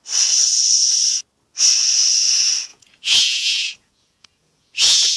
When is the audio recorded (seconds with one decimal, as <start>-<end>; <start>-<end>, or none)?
0.0-2.7